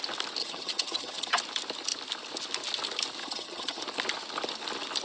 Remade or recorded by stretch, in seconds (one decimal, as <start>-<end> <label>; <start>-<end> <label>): 0.0-0.4 recorded; 0.4-1.4 remade; 1.4-3.2 recorded; 3.2-3.8 remade; 3.8-5.0 recorded